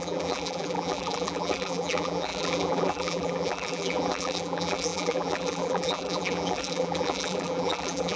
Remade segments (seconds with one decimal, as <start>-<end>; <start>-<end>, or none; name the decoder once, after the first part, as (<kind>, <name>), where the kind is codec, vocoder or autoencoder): 0.0-8.2 (vocoder, BigVGAN v2)